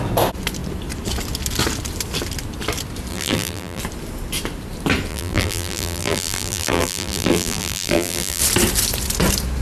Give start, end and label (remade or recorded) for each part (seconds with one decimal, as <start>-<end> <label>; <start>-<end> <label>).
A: 0.0-3.1 recorded; 3.1-3.8 remade; 3.8-5.1 recorded; 5.1-8.4 remade; 8.4-9.6 recorded